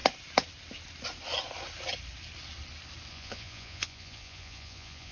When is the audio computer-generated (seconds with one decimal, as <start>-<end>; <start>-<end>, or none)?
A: 3.1-5.1

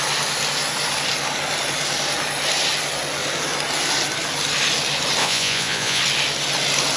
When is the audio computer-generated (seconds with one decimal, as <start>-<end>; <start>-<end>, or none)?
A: 5.2-6.0

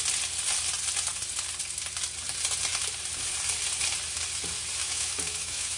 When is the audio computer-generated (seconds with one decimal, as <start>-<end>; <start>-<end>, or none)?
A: 4.8-5.8

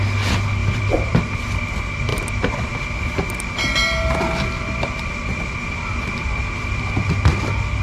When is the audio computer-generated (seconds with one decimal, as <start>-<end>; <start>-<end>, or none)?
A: 0.6-1.5; 2.1-6.8

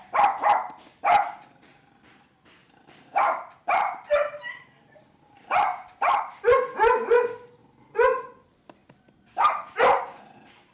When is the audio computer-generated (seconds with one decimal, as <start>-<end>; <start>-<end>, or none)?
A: 2.6-6.2

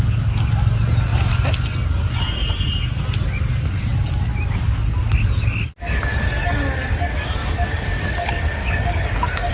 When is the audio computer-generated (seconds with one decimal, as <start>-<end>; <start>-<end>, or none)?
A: 6.1-7.0; 8.6-9.5

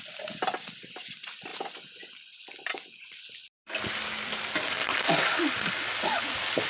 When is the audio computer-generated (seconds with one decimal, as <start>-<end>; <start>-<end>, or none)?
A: 3.4-4.1; 4.8-6.2

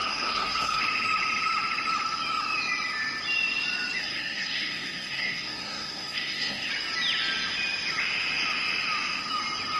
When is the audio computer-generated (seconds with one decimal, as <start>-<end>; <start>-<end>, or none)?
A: 0.0-0.8; 4.0-6.7